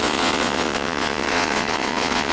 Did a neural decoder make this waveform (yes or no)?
yes